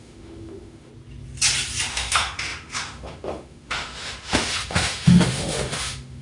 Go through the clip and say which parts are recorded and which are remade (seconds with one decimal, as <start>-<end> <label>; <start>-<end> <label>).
0.0-0.9 remade; 0.9-1.9 recorded; 1.9-6.2 remade